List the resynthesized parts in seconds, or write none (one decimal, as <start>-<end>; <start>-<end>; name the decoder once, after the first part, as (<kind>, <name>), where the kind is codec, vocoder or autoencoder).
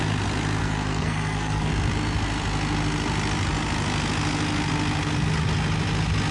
0.6-1.7 (codec, SNAC)